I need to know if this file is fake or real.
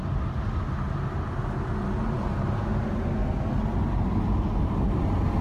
real